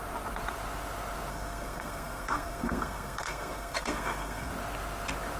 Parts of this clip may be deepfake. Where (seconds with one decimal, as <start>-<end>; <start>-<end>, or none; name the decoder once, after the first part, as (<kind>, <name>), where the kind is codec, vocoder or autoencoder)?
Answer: 1.3-4.5 (codec, SNAC)